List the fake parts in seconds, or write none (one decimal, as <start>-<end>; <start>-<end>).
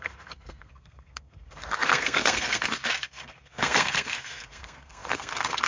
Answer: 0.0-5.7